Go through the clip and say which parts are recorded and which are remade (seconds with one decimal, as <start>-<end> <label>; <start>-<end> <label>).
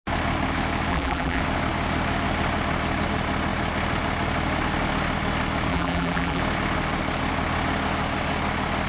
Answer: 0.0-0.9 recorded; 0.9-1.4 remade; 1.4-5.7 recorded; 5.7-6.4 remade; 6.4-8.9 recorded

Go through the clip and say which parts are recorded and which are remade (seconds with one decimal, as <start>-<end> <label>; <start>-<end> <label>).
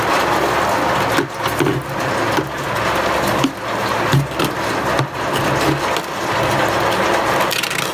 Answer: 0.0-7.9 recorded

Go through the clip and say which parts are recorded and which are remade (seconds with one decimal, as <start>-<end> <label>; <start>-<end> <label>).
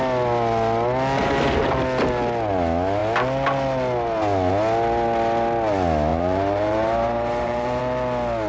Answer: 0.0-6.1 recorded; 6.1-7.8 remade; 7.8-8.5 recorded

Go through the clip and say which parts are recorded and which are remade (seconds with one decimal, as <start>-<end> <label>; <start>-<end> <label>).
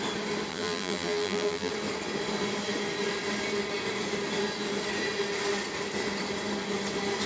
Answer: 0.0-0.5 recorded; 0.5-1.7 remade; 1.7-7.3 recorded